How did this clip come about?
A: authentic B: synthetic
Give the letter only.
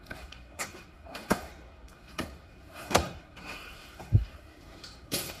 B